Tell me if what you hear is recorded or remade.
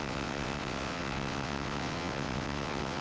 remade